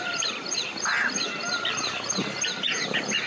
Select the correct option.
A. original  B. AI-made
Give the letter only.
A